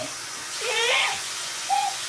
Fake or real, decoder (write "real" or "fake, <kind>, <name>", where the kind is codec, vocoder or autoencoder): fake, vocoder, Vocos